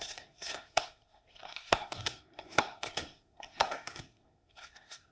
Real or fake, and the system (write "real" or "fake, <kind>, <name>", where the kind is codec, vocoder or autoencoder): fake, codec, SNAC